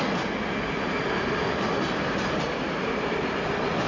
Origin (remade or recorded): recorded